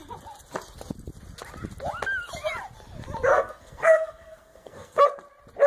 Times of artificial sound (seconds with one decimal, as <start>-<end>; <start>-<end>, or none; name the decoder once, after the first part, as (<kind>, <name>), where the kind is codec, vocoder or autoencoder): 3.3-5.0 (codec, SNAC)